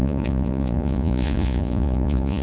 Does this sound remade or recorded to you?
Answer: remade